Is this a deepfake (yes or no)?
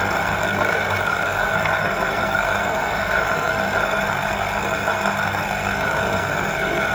yes